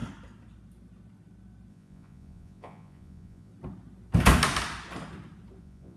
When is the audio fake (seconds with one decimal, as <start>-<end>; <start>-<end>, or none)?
1.7-3.5; 5.6-6.0